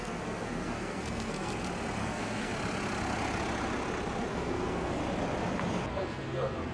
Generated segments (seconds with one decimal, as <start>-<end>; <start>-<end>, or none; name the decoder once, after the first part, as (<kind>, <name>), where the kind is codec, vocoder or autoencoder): 0.0-1.5 (codec, SNAC); 2.0-2.5; 4.3-5.0; 5.9-6.7